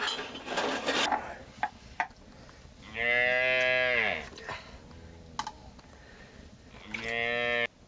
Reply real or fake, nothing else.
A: real